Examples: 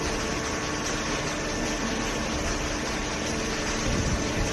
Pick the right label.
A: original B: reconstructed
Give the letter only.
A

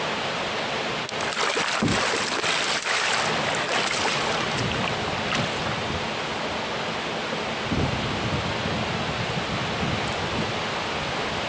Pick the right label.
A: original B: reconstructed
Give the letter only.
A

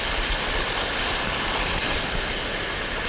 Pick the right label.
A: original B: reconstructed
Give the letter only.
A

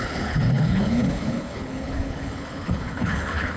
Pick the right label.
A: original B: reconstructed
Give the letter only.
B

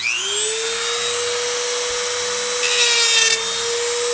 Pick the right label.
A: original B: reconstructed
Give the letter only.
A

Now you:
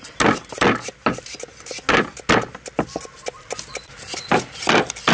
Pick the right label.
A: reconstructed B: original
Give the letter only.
B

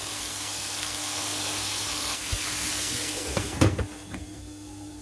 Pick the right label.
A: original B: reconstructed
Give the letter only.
B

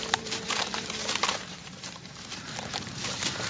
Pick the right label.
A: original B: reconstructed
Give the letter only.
B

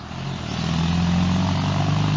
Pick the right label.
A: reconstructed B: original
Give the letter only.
B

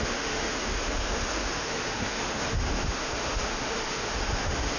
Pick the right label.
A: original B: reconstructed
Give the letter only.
B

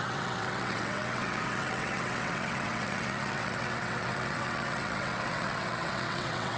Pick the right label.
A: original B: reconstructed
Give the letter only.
B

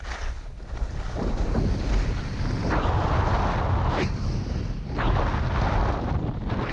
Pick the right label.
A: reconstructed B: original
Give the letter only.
B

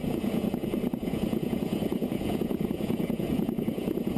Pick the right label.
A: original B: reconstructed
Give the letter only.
B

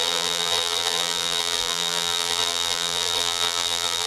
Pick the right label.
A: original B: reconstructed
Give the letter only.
B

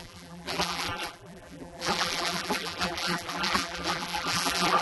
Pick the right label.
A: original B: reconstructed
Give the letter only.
B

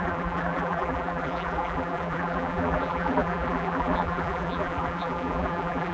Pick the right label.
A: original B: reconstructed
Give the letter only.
B